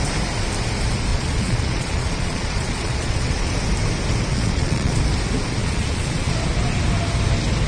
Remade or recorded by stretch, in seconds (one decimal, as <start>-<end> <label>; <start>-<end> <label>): 0.0-1.1 recorded; 1.1-3.5 remade; 3.5-4.3 recorded; 4.3-5.0 remade; 5.0-5.6 recorded; 5.6-6.3 remade; 6.3-7.7 recorded